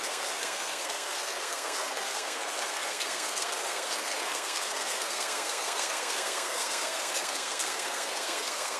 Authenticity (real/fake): fake